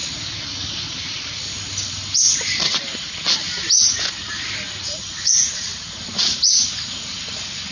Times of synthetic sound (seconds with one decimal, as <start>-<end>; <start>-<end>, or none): 4.8-6.0